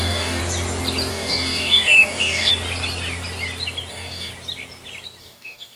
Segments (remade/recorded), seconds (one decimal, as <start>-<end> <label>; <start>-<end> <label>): 0.0-0.4 remade; 0.4-1.1 recorded; 1.1-2.5 remade; 2.5-3.9 recorded; 3.9-4.3 remade; 4.3-5.2 recorded; 5.2-5.8 remade